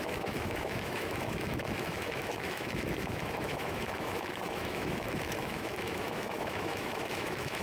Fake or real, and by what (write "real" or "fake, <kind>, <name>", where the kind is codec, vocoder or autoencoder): fake, autoencoder, DAC-VAE